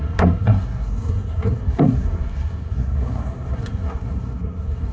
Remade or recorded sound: remade